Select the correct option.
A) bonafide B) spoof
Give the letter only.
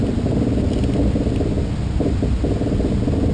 A